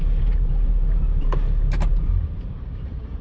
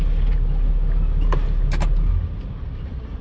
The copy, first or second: first